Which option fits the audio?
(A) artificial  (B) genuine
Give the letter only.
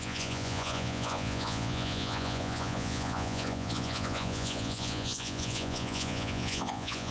A